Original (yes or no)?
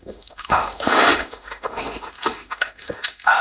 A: no